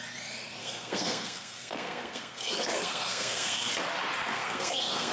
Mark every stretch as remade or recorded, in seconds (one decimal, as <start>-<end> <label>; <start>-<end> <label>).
0.0-0.6 recorded; 0.6-3.7 remade; 3.7-4.3 recorded; 4.3-5.1 remade